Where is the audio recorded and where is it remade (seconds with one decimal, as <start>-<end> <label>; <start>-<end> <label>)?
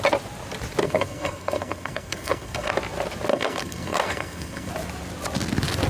0.0-0.8 recorded; 0.8-2.7 remade; 2.7-3.3 recorded; 3.3-4.7 remade; 4.7-5.9 recorded